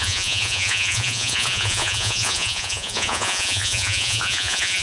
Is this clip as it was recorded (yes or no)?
no